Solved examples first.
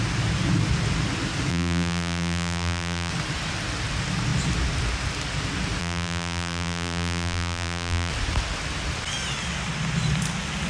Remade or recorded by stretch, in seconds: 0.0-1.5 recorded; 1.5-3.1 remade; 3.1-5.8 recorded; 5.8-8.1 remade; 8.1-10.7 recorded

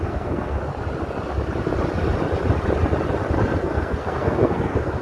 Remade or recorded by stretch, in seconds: 0.0-0.7 remade; 0.7-3.6 recorded; 3.6-5.0 remade

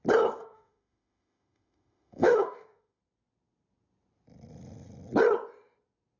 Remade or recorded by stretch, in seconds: 0.0-0.4 recorded; 0.4-3.0 remade; 3.0-6.2 recorded

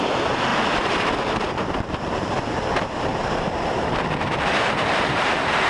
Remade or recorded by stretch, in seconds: 0.0-3.1 recorded; 3.1-5.3 remade; 5.3-5.7 recorded

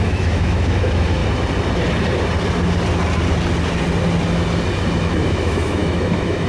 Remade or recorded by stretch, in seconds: 0.0-1.2 remade; 1.2-5.0 recorded; 5.0-6.5 remade